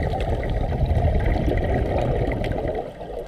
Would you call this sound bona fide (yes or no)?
yes